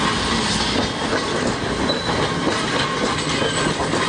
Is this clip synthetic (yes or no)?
no